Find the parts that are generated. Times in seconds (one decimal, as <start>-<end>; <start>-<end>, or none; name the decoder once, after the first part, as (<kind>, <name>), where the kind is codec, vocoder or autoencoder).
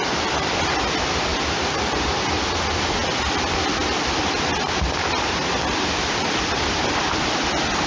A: none